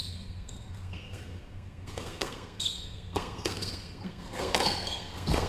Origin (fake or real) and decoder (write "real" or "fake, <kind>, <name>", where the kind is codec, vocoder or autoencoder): fake, codec, SNAC